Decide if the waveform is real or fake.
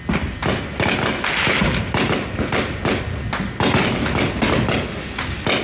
real